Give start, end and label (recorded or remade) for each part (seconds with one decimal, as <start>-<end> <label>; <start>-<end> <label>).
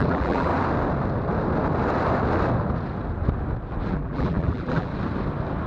0.0-0.5 remade; 0.5-3.9 recorded; 3.9-4.9 remade; 4.9-5.7 recorded